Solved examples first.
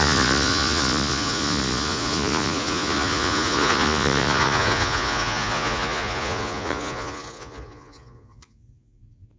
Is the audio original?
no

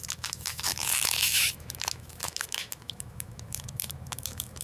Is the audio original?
no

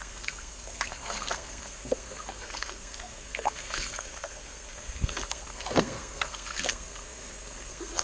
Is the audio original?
no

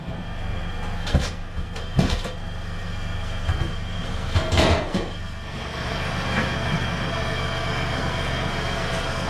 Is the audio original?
no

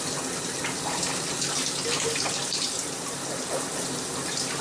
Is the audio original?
yes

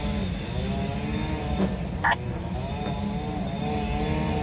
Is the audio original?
yes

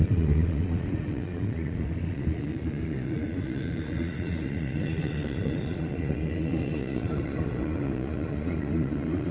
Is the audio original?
no